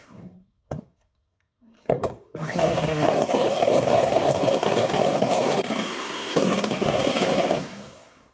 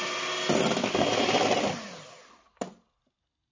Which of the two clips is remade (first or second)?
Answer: first